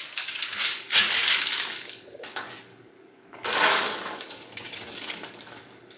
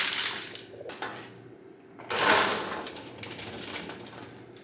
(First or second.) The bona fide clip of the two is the second